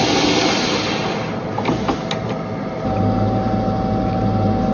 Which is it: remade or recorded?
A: recorded